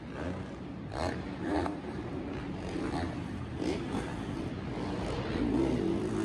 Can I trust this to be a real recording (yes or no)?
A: yes